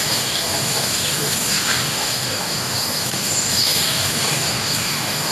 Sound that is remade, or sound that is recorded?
remade